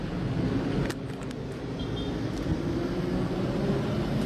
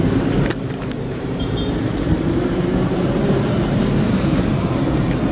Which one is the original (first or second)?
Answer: first